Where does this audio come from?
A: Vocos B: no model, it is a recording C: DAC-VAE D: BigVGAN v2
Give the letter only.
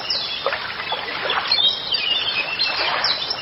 B